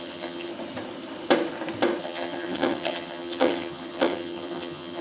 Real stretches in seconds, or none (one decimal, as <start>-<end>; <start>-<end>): 0.5-2.0